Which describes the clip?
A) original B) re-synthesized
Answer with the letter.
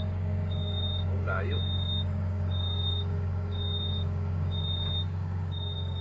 B